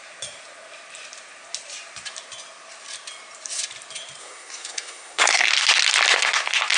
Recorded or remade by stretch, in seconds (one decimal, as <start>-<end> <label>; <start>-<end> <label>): 0.0-4.2 recorded; 4.2-5.5 remade; 5.5-6.8 recorded